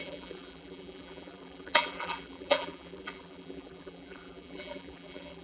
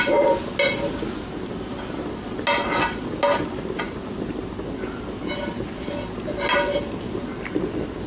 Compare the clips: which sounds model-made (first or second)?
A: first